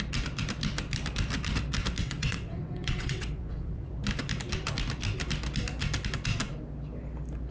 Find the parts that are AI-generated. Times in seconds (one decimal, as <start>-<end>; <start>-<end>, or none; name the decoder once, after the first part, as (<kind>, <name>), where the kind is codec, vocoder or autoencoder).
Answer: 2.0-3.9 (vocoder, WaveNeXt)